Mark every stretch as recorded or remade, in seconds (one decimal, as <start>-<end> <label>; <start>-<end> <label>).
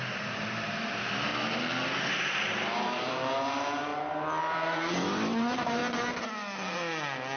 0.0-1.3 remade; 1.3-2.1 recorded; 2.1-3.9 remade; 3.9-4.4 recorded; 4.4-5.8 remade; 5.8-7.4 recorded